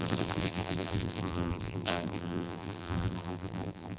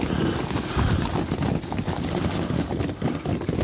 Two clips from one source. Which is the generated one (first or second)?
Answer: first